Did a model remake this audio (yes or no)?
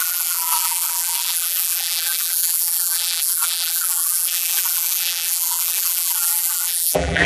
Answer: yes